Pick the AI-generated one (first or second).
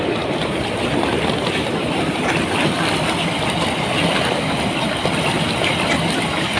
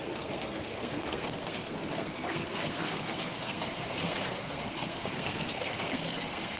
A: second